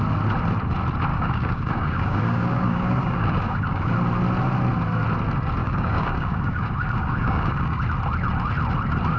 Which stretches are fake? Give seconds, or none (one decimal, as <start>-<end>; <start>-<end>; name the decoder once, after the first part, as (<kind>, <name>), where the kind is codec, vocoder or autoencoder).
1.1-3.9 (codec, DAC); 5.6-7.8